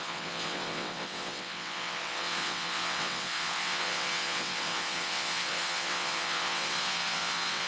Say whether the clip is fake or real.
fake